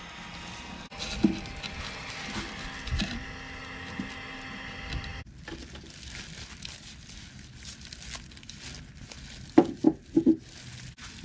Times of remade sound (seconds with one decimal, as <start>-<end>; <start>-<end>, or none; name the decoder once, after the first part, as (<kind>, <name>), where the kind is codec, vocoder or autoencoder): none